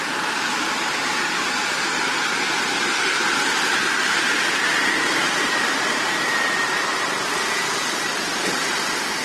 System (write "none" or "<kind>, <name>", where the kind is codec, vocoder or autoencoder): none